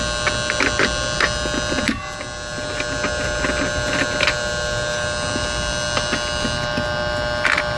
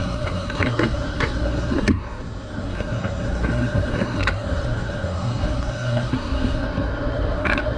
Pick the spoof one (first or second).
second